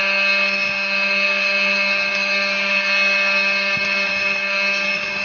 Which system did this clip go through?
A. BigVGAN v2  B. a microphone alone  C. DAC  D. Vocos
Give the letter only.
C